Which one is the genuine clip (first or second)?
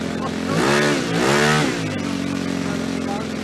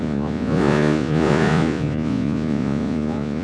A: first